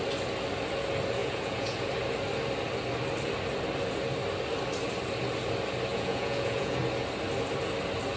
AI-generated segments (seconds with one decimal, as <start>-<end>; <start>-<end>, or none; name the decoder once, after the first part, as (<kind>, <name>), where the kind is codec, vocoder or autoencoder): 1.2-1.9 (vocoder, Vocos); 5.9-6.8